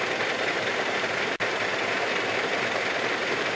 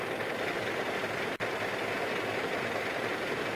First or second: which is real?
second